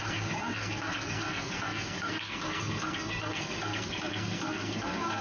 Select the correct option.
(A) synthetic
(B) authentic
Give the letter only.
A